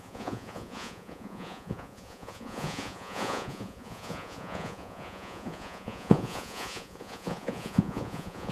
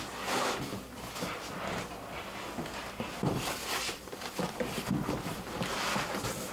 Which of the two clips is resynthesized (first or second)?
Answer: first